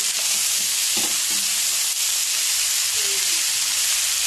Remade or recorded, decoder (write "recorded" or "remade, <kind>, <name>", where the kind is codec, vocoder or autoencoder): recorded